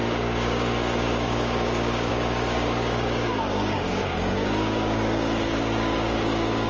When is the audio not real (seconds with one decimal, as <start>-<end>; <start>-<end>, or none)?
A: 0.0-6.7